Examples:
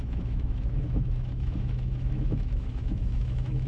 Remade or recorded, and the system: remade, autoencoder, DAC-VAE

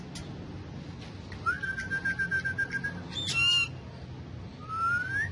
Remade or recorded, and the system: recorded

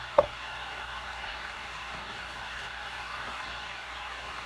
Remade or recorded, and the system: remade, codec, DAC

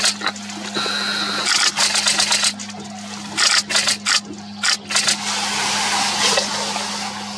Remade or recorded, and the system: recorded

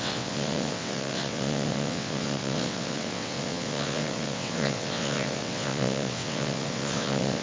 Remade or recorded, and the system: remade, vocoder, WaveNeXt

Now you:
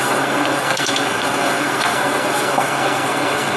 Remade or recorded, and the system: remade, codec, SNAC